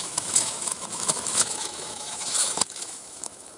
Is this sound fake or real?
fake